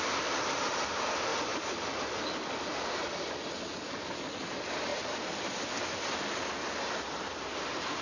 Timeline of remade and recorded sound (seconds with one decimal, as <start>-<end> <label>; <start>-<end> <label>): 0.0-1.3 recorded; 1.3-2.0 remade; 2.0-4.9 recorded; 4.9-5.7 remade; 5.7-8.0 recorded